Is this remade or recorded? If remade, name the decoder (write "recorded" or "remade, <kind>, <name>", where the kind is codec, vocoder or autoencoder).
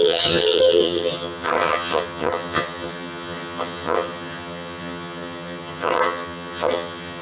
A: remade, vocoder, HiFi-GAN